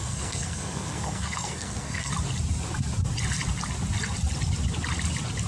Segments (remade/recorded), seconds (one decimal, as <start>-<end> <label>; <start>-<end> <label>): 0.0-2.1 remade; 2.1-5.5 recorded